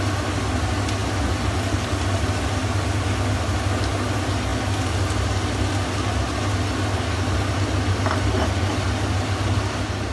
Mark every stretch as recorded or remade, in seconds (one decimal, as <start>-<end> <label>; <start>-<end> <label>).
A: 0.0-10.1 recorded